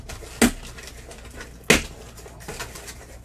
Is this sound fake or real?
real